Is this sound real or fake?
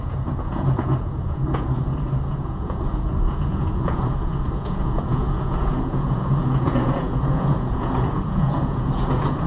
fake